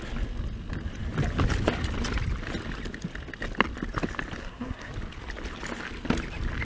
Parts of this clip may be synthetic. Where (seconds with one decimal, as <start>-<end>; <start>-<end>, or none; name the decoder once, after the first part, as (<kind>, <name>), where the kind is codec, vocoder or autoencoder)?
4.4-4.9 (codec, SNAC)